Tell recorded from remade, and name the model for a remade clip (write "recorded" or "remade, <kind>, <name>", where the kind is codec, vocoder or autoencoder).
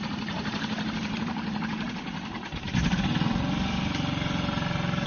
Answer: remade, vocoder, BigVGAN v2